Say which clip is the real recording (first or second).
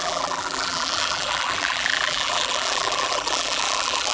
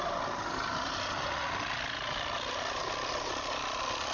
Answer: second